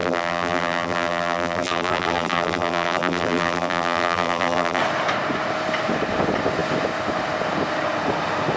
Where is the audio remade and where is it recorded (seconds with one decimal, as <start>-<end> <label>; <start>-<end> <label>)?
0.0-4.8 remade; 4.8-8.6 recorded